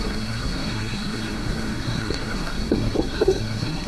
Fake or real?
fake